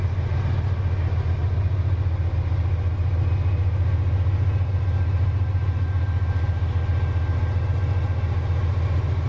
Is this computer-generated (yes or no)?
no